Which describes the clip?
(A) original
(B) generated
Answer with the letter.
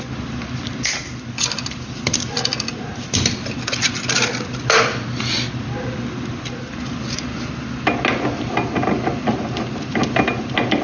A